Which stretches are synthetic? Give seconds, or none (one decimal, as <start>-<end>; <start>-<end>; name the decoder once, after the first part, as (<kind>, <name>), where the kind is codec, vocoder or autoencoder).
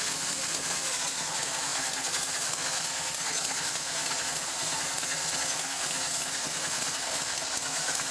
0.0-8.1 (codec, SNAC)